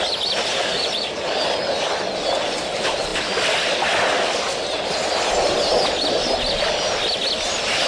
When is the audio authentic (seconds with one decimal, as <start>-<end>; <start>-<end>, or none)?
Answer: 0.0-7.9